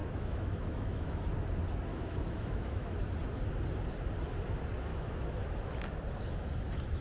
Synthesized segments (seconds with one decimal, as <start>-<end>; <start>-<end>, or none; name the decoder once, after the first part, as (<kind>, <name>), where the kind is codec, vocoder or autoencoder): 0.0-1.2 (autoencoder, DAC-VAE); 1.9-3.0; 4.9-5.7